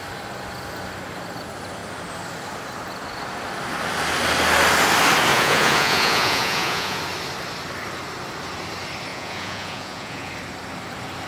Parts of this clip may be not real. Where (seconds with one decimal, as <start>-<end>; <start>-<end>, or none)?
5.3-7.0; 9.1-10.3